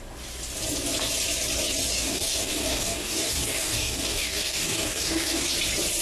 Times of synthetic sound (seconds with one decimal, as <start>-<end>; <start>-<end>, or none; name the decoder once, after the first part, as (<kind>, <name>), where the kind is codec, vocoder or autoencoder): 1.9-5.5 (codec, DAC)